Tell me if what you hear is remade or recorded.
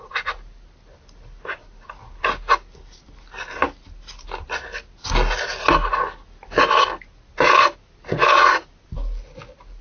recorded